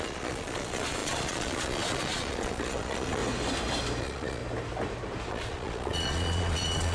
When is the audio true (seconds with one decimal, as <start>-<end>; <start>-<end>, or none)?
3.2-4.0; 4.4-5.3